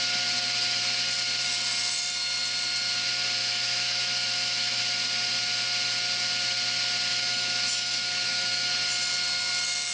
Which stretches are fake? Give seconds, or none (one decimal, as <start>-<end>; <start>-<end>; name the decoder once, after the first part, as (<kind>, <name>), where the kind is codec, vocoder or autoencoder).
3.4-4.8 (autoencoder, DAC-VAE); 7.1-8.7